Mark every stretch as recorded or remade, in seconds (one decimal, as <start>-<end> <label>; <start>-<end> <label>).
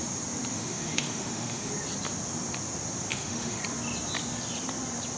0.0-0.5 recorded; 0.5-1.7 remade; 1.7-3.1 recorded; 3.1-3.6 remade; 3.6-5.2 recorded